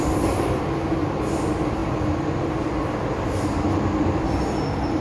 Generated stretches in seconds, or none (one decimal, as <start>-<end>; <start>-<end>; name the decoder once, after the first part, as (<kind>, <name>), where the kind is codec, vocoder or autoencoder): none